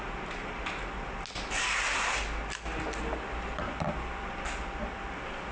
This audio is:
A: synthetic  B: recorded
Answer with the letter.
B